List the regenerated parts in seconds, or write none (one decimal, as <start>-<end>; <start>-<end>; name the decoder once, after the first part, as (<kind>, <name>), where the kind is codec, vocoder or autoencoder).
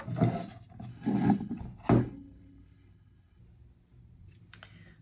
0.9-1.6 (codec, HILCodec); 2.0-3.4